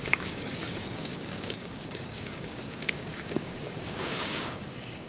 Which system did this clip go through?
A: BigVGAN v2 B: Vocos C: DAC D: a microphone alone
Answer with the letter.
C